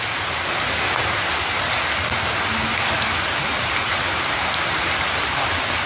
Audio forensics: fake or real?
real